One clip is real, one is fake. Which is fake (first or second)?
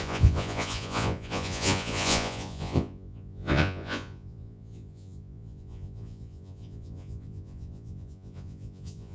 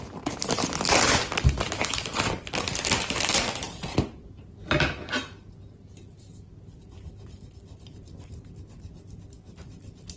first